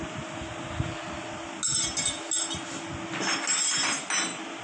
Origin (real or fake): real